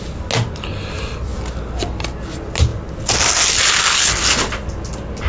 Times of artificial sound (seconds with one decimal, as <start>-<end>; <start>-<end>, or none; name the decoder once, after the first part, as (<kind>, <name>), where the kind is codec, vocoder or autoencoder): none